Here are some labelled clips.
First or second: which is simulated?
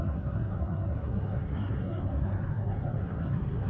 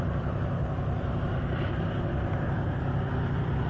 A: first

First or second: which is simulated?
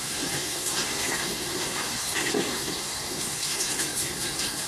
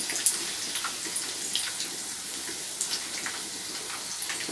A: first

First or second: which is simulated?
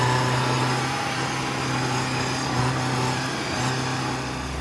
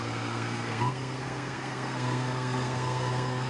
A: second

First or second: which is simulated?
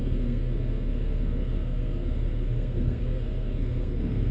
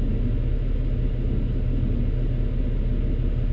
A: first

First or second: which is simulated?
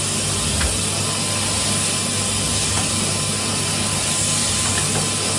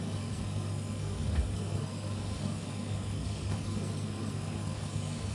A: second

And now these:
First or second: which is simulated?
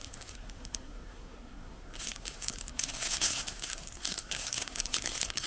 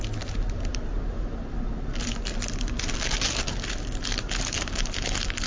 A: first